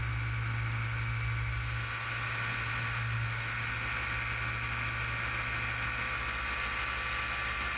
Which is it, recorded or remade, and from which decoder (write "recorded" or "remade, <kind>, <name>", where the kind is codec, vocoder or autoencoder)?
recorded